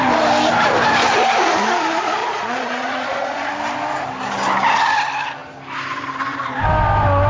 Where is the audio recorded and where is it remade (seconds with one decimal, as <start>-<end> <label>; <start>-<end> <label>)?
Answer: 0.0-2.2 recorded; 2.2-3.5 remade; 3.5-7.3 recorded